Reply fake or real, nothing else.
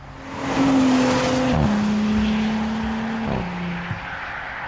real